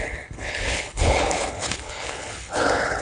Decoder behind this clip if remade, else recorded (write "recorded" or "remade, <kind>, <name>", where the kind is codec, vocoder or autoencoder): remade, codec, HILCodec